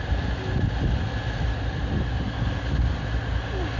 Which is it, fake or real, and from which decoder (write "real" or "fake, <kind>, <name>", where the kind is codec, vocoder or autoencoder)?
real